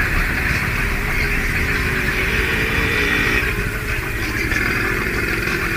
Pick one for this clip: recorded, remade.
remade